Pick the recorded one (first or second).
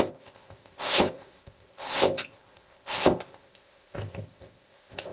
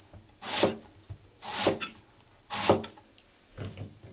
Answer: second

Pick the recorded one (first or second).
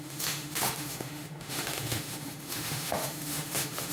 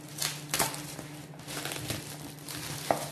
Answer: second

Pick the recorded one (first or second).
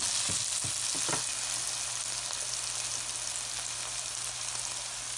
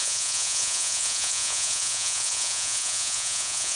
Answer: first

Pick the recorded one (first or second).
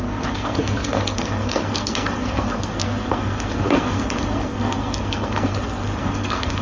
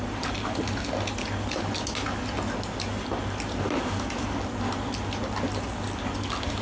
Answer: second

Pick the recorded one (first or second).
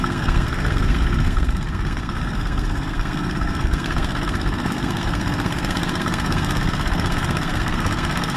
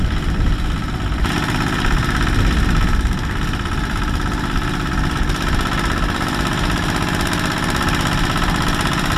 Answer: second